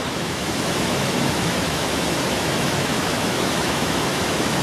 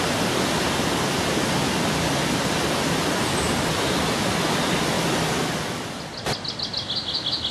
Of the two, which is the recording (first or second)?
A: second